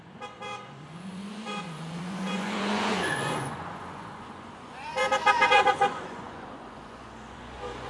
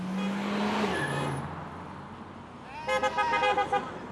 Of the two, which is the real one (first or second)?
second